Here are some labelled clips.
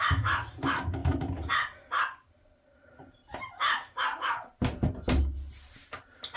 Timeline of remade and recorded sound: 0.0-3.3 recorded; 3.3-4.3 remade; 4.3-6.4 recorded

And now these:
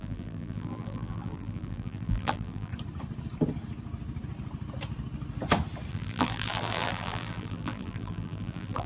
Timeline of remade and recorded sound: 0.0-2.7 remade; 2.7-5.9 recorded; 5.9-8.9 remade